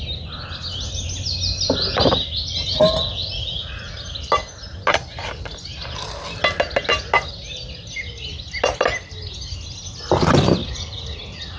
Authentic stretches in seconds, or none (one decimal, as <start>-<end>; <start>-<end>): 0.0-3.2; 4.0-10.6